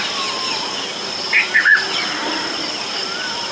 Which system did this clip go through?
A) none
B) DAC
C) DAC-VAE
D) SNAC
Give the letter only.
A